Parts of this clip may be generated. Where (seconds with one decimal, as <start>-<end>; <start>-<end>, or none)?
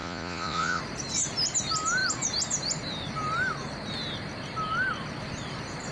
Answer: 0.0-0.8